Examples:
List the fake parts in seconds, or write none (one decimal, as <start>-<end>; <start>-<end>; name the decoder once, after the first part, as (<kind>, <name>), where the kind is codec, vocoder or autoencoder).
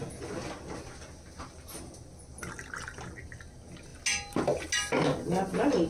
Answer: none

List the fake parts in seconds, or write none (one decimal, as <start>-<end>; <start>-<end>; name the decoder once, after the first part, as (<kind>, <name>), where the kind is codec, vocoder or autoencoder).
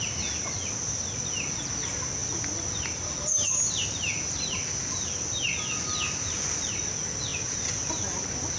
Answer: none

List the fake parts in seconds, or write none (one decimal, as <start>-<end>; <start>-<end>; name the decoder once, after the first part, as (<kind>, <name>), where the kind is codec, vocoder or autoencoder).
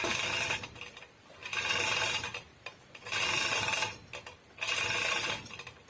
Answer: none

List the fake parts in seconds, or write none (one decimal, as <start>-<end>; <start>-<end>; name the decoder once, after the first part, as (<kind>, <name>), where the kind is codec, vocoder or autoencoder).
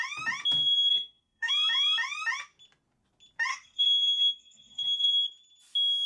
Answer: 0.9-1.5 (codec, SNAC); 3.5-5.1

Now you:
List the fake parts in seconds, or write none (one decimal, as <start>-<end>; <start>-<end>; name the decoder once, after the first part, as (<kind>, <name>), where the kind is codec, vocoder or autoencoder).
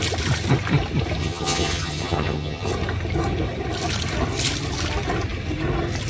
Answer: 1.2-2.7 (vocoder, HiFi-GAN)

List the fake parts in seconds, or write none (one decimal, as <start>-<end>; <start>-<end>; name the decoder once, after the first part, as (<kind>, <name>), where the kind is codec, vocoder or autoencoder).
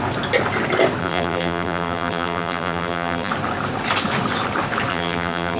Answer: 1.0-3.3 (vocoder, BigVGAN v2); 4.9-5.6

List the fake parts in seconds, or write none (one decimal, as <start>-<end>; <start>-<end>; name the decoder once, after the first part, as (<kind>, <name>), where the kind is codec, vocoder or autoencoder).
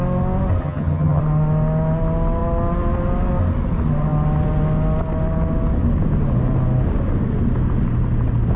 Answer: 0.6-1.2 (vocoder, HiFi-GAN)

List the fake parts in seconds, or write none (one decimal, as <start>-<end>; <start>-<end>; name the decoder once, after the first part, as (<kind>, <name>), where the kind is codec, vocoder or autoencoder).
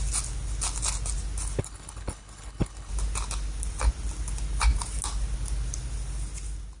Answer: 1.6-2.9 (codec, HILCodec)